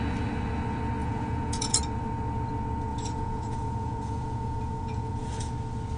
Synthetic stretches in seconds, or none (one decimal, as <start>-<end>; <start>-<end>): 1.0-1.8; 2.9-5.5